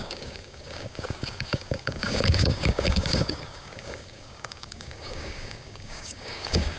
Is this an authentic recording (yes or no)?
no